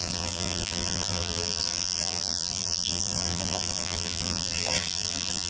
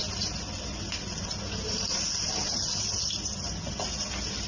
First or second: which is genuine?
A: second